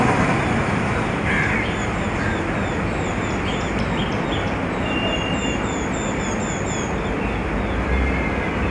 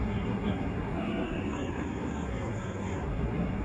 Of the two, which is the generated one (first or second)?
second